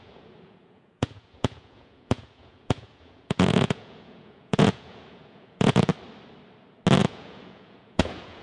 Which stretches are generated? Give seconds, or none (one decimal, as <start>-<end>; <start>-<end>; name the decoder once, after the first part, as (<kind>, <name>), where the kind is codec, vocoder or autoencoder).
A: 0.0-5.9 (vocoder, Vocos); 7.0-8.4